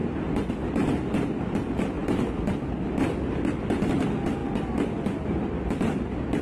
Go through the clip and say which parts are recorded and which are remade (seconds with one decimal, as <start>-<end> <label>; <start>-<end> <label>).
0.0-6.4 recorded